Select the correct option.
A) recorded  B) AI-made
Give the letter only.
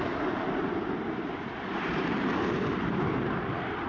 B